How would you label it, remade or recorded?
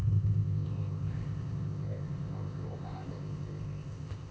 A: remade